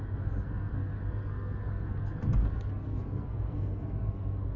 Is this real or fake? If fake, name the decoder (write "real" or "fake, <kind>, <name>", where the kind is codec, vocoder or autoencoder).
fake, codec, SNAC